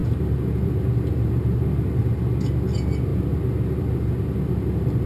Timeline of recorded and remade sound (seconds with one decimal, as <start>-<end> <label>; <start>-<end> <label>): 0.0-2.0 remade; 2.0-5.1 recorded